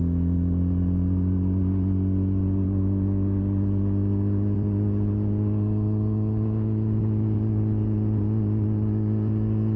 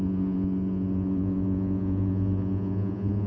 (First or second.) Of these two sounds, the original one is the first